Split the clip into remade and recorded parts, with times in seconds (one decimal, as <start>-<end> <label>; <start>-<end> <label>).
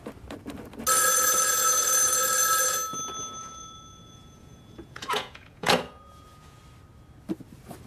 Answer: 0.0-3.4 recorded; 3.4-6.6 remade; 6.6-7.9 recorded